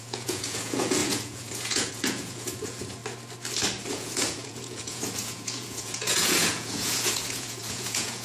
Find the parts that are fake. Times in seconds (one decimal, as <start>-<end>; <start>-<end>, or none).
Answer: 0.0-3.0; 3.9-8.2